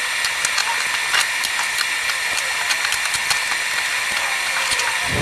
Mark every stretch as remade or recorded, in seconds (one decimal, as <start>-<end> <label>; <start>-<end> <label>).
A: 0.0-5.2 recorded